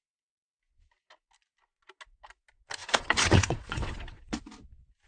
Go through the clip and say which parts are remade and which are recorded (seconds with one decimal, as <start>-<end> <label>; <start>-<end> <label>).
0.0-2.8 recorded; 2.8-4.4 remade; 4.4-5.1 recorded